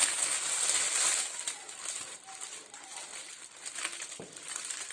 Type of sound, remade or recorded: recorded